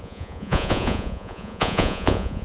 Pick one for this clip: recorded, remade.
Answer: remade